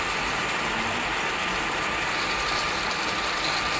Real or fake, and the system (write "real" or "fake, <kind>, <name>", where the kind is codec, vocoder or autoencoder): real